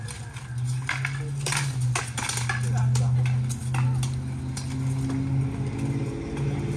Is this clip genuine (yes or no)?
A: yes